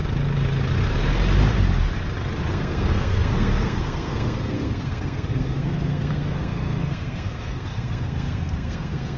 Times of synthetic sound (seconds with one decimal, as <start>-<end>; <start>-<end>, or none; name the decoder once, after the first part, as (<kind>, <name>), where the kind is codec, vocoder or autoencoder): 2.5-9.2 (codec, SNAC)